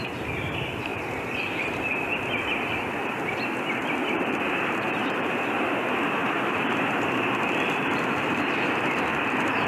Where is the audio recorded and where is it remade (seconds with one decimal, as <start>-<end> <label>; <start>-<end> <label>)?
0.0-0.9 remade; 0.9-4.2 recorded; 4.2-9.7 remade